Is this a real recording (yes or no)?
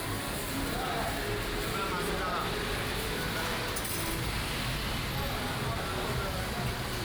yes